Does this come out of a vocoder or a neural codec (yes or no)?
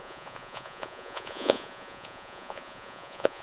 yes